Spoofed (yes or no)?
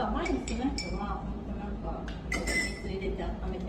yes